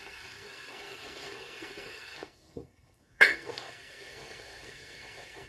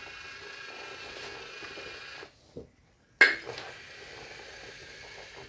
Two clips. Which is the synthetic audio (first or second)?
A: first